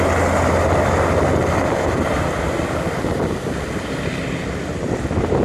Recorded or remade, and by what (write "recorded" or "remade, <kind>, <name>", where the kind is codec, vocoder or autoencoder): recorded